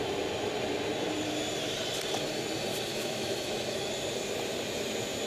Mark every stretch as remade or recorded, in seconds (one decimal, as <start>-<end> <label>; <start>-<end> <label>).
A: 0.0-2.9 recorded; 2.9-3.9 remade; 3.9-5.3 recorded